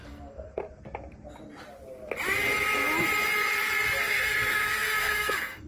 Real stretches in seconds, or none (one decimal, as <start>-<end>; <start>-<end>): 0.6-4.0